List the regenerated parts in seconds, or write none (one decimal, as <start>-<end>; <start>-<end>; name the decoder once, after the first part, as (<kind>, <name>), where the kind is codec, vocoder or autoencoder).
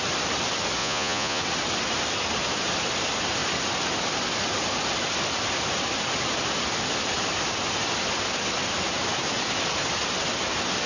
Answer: 0.8-1.4 (vocoder, Vocos)